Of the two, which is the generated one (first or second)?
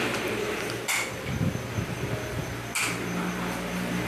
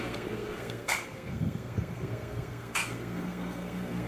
second